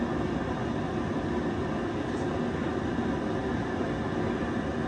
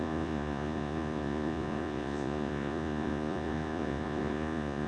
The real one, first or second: first